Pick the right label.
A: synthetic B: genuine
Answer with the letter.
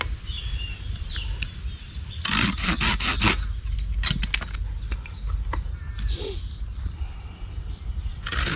B